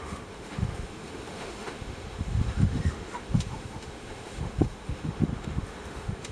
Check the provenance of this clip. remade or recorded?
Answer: remade